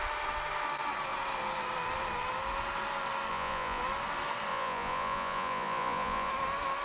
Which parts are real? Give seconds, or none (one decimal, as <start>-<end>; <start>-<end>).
0.0-3.3; 3.8-4.5; 6.3-6.8